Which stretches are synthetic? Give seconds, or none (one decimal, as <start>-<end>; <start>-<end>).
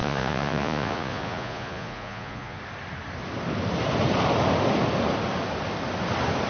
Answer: 0.0-2.6